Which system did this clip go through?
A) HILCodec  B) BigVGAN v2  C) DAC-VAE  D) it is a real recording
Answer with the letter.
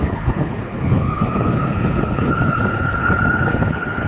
A